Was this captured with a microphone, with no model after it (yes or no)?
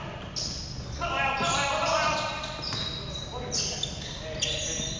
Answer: yes